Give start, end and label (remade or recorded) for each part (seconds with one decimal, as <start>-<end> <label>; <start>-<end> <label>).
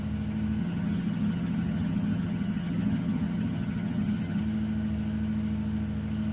0.0-0.6 recorded; 0.6-4.4 remade; 4.4-6.3 recorded